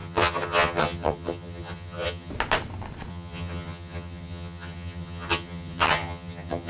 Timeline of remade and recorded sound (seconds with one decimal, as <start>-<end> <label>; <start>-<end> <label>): 0.0-2.3 remade; 2.3-3.1 recorded; 3.1-6.7 remade